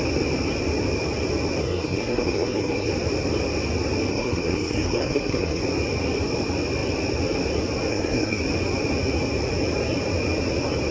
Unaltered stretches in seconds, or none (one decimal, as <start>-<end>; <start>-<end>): 0.0-1.6; 2.9-4.1; 5.6-7.9; 8.4-10.9